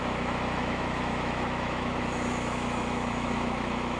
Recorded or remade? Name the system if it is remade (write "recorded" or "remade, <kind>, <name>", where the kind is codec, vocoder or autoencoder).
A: remade, autoencoder, DAC-VAE